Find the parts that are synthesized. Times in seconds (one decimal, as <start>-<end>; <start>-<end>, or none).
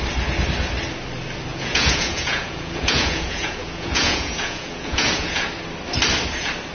1.5-5.5